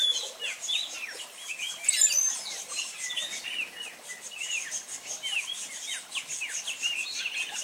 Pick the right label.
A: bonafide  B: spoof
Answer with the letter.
A